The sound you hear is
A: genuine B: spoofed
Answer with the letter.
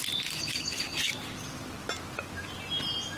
A